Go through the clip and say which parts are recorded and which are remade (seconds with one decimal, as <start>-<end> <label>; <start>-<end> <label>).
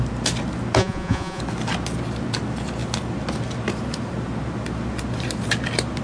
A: 0.0-0.8 recorded; 0.8-1.4 remade; 1.4-6.0 recorded